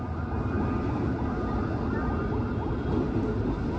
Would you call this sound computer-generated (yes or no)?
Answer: no